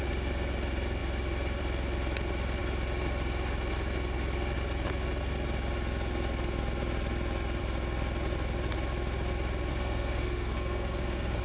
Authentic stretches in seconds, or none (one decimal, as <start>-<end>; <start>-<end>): 0.0-9.7

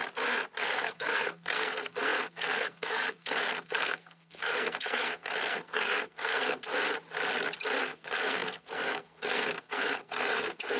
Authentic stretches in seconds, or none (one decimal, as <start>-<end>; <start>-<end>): 0.0-0.6; 6.7-7.8